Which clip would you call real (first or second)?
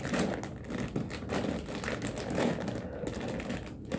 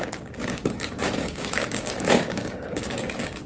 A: first